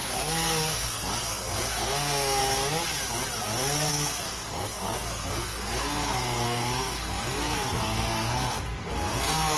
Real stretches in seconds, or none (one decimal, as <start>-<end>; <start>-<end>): 2.4-3.9